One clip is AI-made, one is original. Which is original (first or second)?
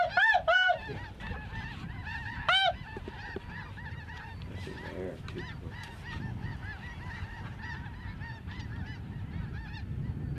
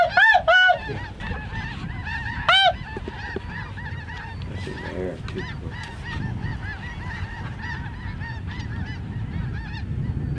second